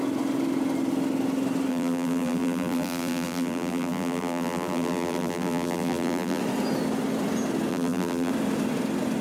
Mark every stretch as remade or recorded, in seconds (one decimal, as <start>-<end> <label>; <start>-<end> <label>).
0.0-1.7 recorded; 1.7-6.4 remade; 6.4-7.7 recorded; 7.7-8.3 remade; 8.3-9.2 recorded